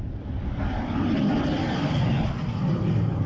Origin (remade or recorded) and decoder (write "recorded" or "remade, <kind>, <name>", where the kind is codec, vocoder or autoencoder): recorded